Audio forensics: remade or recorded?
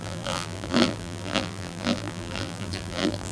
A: remade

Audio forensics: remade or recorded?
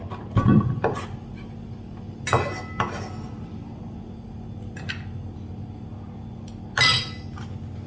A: recorded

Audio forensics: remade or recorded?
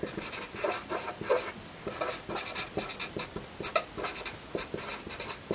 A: recorded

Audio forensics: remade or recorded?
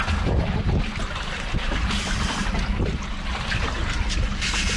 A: remade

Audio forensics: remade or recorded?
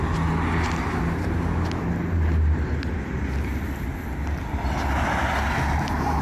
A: recorded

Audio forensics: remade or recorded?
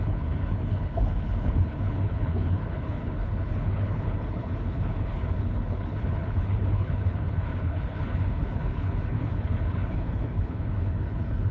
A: remade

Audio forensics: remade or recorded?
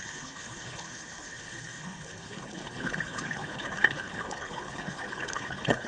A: remade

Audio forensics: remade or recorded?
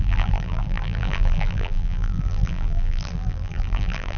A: remade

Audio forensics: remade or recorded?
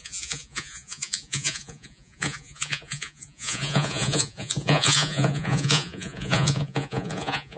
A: remade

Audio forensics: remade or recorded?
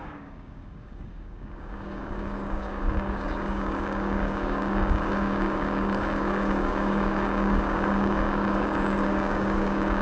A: remade